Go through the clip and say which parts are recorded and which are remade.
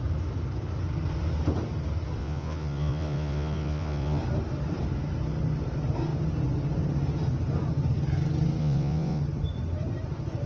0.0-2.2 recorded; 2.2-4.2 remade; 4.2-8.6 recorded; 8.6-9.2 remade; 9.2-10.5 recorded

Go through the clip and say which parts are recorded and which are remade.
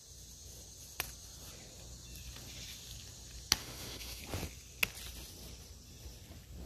0.0-3.6 recorded; 3.6-4.2 remade; 4.2-6.7 recorded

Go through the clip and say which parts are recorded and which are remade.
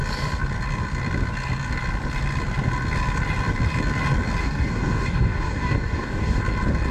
0.0-4.4 recorded; 4.4-6.4 remade; 6.4-6.9 recorded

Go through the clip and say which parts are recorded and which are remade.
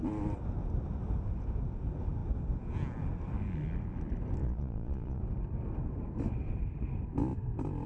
0.0-4.4 recorded; 4.4-5.2 remade; 5.2-7.9 recorded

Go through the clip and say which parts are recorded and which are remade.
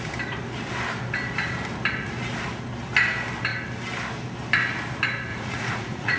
0.0-5.3 recorded; 5.3-6.2 remade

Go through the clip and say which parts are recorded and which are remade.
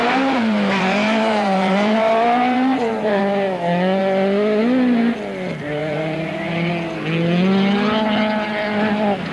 0.0-3.2 remade; 3.2-5.8 recorded; 5.8-6.7 remade; 6.7-9.3 recorded